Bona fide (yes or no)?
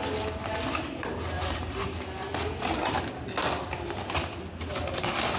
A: yes